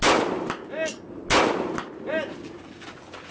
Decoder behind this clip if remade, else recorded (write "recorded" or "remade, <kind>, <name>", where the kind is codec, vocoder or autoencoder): recorded